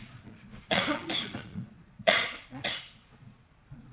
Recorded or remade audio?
remade